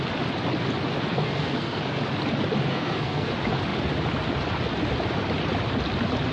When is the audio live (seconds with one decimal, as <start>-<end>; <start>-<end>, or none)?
0.0-1.1; 2.0-2.7; 3.3-6.3